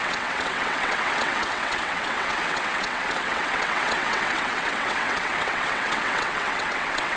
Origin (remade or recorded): remade